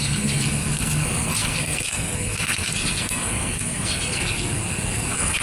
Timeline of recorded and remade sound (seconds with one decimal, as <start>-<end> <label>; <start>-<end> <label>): 0.0-5.4 remade